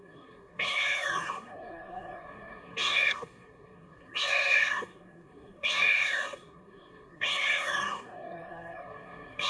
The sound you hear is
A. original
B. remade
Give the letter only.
B